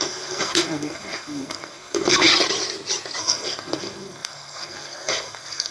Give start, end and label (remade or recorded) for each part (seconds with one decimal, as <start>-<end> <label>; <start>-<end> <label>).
0.0-2.3 remade; 2.3-3.2 recorded; 3.2-5.7 remade